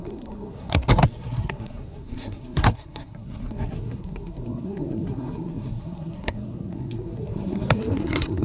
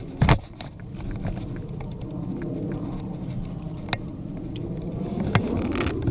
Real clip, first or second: second